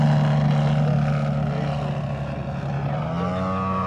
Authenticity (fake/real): real